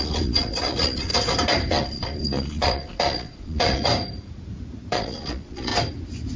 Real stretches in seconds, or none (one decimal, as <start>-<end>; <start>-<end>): 1.1-1.7; 3.9-4.9; 5.7-6.4